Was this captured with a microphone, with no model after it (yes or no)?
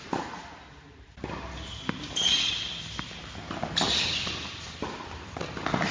yes